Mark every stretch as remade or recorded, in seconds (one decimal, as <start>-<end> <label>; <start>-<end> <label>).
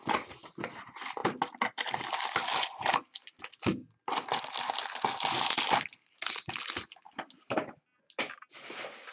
0.0-9.1 recorded